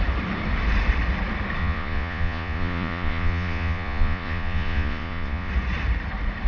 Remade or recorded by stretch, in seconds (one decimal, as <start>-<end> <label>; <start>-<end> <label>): 0.0-1.6 recorded; 1.6-5.5 remade; 5.5-6.5 recorded